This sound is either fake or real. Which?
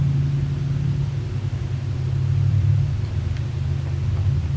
fake